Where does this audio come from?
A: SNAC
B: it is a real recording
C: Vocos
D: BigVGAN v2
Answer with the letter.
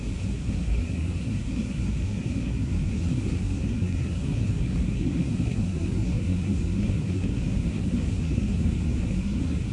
A